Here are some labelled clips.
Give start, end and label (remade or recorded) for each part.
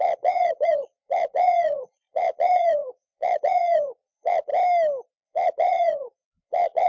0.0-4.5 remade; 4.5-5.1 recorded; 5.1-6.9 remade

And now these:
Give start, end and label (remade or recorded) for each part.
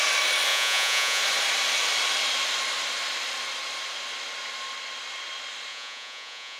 0.0-0.5 recorded; 0.5-1.2 remade; 1.2-5.7 recorded; 5.7-6.6 remade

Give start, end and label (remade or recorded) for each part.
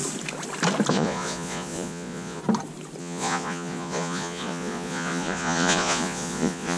0.0-0.9 recorded; 0.9-2.4 remade; 2.4-3.0 recorded; 3.0-6.8 remade